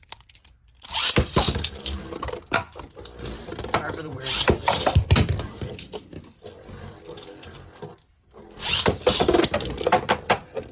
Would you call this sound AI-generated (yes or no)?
yes